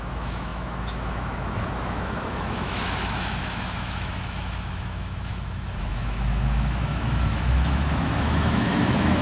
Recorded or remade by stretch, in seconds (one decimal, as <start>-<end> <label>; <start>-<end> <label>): 0.0-9.2 remade